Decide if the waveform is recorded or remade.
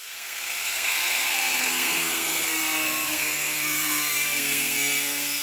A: remade